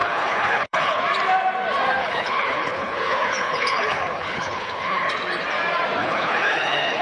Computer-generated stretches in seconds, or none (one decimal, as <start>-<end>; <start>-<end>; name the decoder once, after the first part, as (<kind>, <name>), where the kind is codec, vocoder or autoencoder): 0.0-1.0 (codec, HILCodec); 2.0-5.1; 6.0-7.0